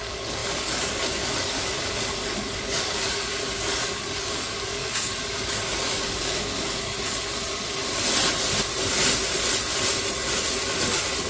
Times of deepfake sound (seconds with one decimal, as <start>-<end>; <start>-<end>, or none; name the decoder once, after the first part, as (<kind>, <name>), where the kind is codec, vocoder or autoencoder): 0.0-7.8 (codec, DAC); 10.5-11.3